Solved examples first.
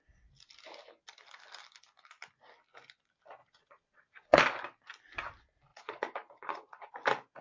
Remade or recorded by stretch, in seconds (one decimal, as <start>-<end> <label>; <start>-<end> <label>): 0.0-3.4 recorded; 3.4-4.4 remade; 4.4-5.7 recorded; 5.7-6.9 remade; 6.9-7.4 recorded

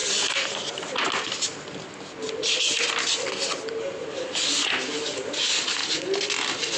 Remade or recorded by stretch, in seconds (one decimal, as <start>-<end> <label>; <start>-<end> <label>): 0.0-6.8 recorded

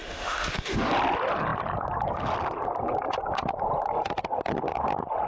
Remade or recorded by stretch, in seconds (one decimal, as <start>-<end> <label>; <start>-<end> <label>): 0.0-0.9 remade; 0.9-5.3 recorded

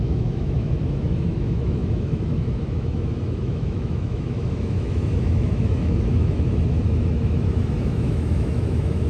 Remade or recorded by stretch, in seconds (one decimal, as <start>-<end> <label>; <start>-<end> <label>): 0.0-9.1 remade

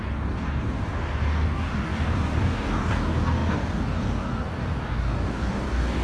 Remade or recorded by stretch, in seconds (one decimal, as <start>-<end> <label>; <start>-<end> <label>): 0.0-6.0 remade